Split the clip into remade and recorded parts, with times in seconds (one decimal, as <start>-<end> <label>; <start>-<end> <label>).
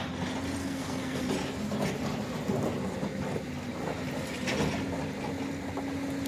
0.0-0.6 recorded; 0.6-1.2 remade; 1.2-6.3 recorded